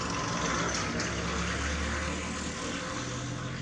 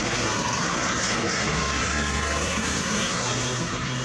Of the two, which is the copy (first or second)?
second